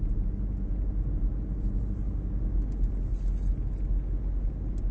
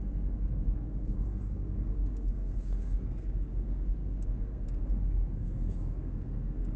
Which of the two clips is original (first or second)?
first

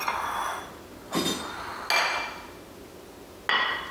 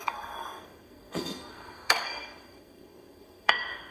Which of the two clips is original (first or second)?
first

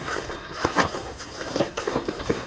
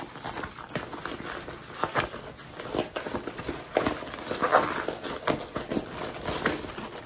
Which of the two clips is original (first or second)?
second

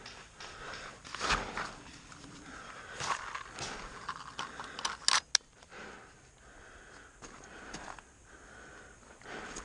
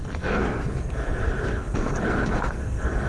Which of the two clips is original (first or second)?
first